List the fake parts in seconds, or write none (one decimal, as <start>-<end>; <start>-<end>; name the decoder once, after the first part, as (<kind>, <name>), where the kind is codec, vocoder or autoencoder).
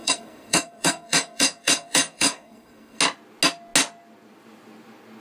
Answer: 0.0-3.0 (codec, SNAC)